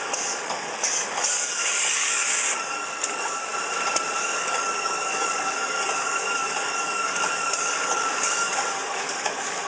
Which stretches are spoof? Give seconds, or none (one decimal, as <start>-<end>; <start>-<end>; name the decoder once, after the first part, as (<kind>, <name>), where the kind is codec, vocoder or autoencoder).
0.0-3.5 (codec, DAC); 4.2-9.7

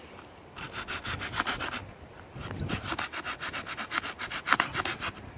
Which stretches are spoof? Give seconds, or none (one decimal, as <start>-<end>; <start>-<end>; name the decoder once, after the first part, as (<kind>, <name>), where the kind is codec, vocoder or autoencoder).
1.8-2.9 (vocoder, BigVGAN v2)

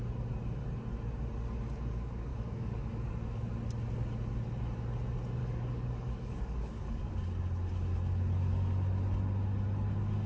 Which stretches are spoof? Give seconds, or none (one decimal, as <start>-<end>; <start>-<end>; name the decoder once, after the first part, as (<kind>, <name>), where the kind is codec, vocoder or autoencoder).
2.3-3.1 (codec, DAC); 5.4-7.1

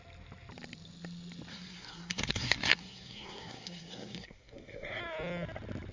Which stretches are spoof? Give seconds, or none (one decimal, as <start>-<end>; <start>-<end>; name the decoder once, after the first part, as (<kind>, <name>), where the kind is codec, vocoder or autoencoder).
1.5-5.0 (codec, SNAC)

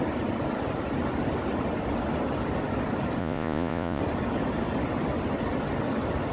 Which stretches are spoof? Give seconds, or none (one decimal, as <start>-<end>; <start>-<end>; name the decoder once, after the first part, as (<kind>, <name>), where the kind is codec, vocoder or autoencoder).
3.2-4.0 (vocoder, Vocos)

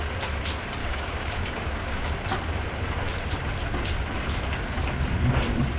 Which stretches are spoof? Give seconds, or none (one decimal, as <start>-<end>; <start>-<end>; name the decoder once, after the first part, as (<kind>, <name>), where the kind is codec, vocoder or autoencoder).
0.8-2.1 (codec, DAC)

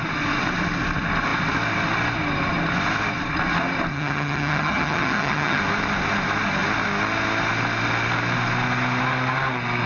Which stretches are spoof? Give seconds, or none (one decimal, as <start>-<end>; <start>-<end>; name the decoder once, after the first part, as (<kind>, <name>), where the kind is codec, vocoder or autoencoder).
3.9-5.6 (vocoder, HiFi-GAN)

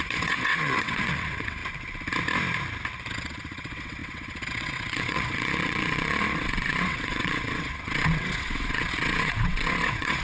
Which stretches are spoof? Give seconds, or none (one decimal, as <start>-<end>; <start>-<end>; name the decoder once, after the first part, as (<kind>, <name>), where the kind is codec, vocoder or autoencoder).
0.0-1.6 (vocoder, WaveNeXt); 3.1-10.2